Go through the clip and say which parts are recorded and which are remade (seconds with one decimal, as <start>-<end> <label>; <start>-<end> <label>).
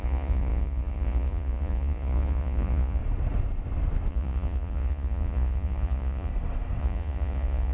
0.0-3.0 remade; 3.0-4.1 recorded; 4.1-6.3 remade; 6.3-6.8 recorded; 6.8-7.7 remade